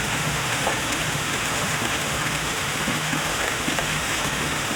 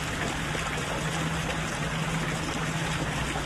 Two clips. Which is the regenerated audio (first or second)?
first